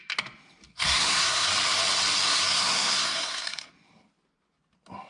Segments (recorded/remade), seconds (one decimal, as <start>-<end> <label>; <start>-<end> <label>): 0.0-0.7 recorded; 0.7-1.5 remade; 1.5-2.3 recorded; 2.3-3.7 remade; 3.7-5.1 recorded